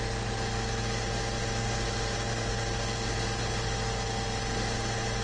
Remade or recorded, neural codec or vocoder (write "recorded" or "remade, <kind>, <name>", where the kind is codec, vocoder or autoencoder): recorded